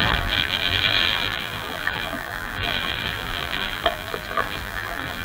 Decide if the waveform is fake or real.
fake